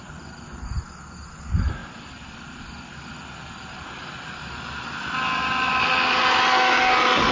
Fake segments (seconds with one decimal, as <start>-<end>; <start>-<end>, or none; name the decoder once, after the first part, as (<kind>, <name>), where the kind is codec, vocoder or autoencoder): none